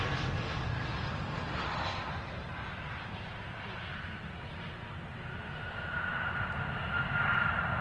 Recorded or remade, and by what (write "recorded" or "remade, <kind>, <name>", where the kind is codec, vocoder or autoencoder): recorded